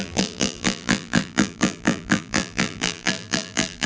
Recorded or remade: remade